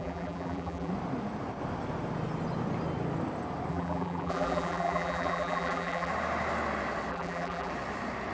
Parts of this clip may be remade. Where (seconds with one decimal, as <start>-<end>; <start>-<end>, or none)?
0.0-0.9; 3.7-6.1; 7.1-7.7